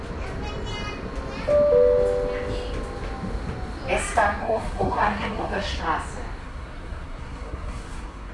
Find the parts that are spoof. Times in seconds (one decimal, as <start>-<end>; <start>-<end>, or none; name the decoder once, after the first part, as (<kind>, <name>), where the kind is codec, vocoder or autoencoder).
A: 4.4-5.8 (codec, SNAC); 6.4-8.3